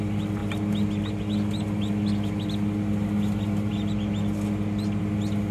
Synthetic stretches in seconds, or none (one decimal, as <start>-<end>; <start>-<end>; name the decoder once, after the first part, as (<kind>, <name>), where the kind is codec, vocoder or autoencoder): none